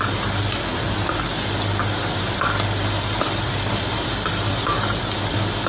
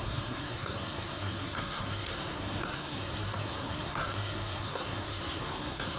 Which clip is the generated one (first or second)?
second